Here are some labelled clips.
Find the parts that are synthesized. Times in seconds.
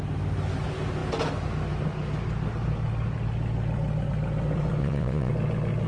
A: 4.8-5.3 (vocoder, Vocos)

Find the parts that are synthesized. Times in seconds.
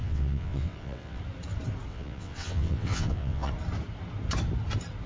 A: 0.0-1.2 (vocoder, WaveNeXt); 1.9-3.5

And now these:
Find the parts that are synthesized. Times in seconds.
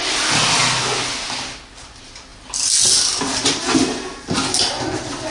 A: none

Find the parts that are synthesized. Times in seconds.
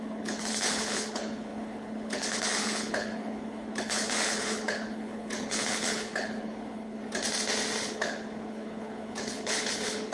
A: 0.0-7.0 (codec, HILCodec); 7.8-10.1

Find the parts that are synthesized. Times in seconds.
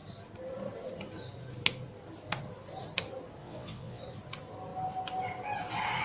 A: 3.4-4.0 (vocoder, WaveNeXt)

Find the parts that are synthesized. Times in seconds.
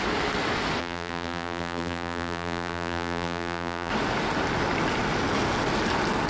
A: 0.8-3.9 (vocoder, BigVGAN v2)